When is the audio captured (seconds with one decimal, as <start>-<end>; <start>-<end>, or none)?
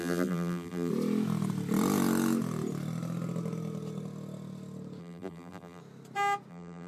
0.9-5.0; 5.8-6.5